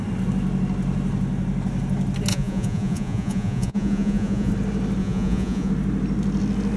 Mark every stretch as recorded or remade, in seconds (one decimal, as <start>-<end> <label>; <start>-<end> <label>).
0.0-2.3 recorded; 2.3-4.5 remade; 4.5-5.0 recorded; 5.0-5.7 remade; 5.7-6.8 recorded